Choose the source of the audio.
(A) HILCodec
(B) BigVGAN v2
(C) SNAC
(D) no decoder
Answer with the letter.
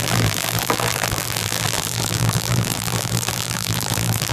B